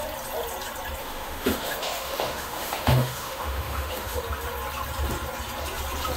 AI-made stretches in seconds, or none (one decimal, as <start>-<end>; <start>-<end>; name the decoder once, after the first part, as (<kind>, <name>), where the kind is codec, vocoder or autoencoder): 1.0-4.2 (autoencoder, DAC-VAE)